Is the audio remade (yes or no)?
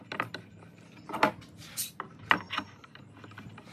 no